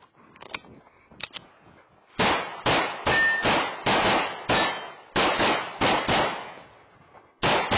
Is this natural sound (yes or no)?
yes